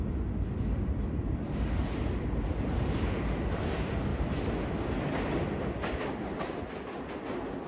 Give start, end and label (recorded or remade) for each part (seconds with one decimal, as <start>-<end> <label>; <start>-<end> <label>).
0.0-7.7 recorded